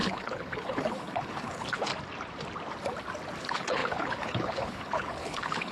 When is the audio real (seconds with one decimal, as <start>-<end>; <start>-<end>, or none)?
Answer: 1.9-3.4